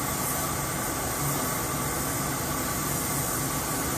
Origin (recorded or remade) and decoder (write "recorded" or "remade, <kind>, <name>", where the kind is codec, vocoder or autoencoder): recorded